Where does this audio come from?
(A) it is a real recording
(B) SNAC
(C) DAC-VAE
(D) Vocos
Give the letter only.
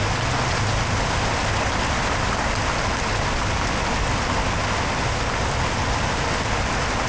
A